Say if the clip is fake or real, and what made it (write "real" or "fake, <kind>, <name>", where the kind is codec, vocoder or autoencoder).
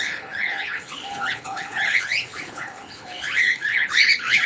fake, codec, HILCodec